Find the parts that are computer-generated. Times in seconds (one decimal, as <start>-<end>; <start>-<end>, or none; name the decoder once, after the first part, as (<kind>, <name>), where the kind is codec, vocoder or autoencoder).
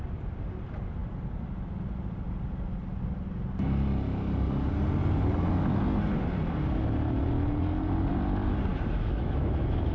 8.7-9.9 (autoencoder, DAC-VAE)